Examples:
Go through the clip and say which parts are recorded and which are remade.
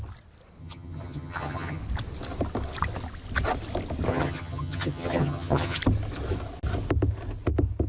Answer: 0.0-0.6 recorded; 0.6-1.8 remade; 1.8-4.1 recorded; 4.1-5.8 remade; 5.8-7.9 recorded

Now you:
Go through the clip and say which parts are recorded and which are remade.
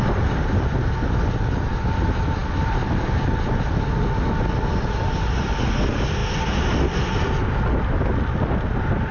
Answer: 0.0-9.1 recorded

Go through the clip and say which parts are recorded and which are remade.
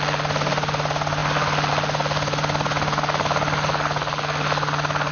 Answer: 0.0-5.1 recorded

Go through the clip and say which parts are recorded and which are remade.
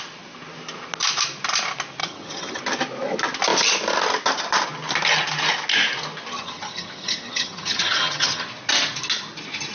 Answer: 0.0-2.0 recorded; 2.0-2.6 remade; 2.6-6.3 recorded; 6.3-8.5 remade; 8.5-9.7 recorded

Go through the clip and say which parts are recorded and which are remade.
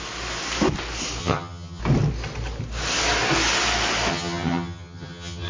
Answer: 0.0-1.2 recorded; 1.2-1.8 remade; 1.8-4.1 recorded; 4.1-5.5 remade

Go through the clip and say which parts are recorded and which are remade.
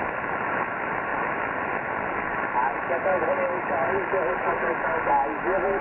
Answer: 0.0-5.8 recorded